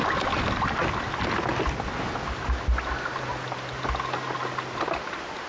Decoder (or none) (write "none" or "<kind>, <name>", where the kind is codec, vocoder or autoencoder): none